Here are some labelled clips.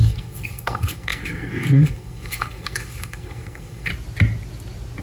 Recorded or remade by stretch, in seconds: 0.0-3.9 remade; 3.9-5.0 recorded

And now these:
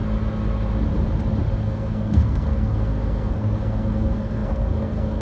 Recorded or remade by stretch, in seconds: 0.0-1.6 recorded; 1.6-5.2 remade

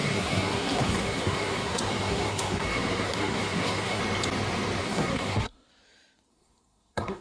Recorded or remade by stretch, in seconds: 0.0-4.0 remade; 4.0-4.8 recorded; 4.8-5.7 remade; 5.7-6.3 recorded; 6.3-7.2 remade

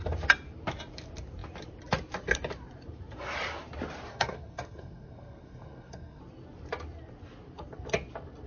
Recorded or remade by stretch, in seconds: 0.0-4.1 recorded; 4.1-6.2 remade; 6.2-8.5 recorded